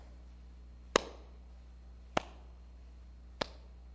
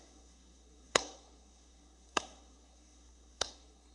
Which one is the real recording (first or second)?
first